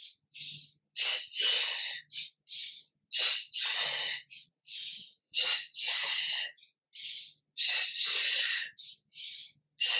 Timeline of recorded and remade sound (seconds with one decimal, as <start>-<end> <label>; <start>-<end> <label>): 0.0-3.7 recorded; 3.7-6.2 remade; 6.2-10.0 recorded